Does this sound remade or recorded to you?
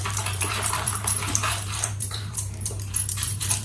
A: remade